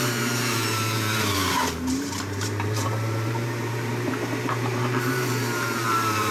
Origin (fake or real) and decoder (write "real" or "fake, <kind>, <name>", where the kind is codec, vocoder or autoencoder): fake, vocoder, BigVGAN v2